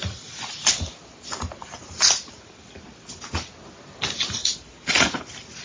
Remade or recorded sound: recorded